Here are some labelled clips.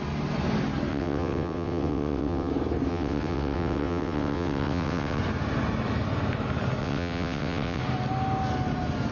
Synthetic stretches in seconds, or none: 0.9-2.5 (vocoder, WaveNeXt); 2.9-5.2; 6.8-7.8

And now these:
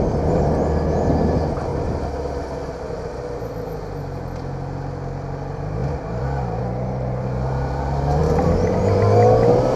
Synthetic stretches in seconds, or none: 1.7-2.4 (vocoder, BigVGAN v2); 5.8-6.6; 8.2-8.8